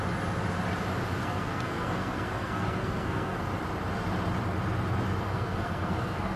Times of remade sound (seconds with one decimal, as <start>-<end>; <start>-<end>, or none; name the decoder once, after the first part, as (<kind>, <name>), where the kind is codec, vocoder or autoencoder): 1.2-3.4 (codec, SNAC); 5.3-6.4